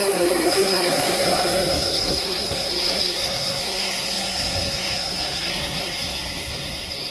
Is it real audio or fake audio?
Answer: fake